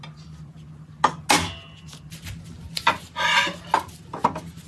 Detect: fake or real real